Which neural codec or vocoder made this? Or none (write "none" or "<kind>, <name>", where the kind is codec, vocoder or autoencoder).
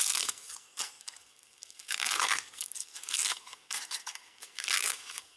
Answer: codec, SNAC